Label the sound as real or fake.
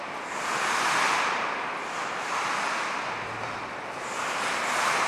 real